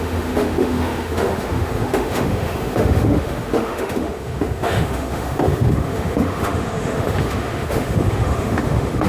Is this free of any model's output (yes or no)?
no